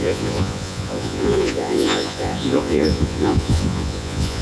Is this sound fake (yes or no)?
yes